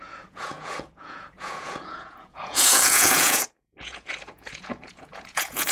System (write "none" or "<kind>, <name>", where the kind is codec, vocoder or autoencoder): vocoder, Vocos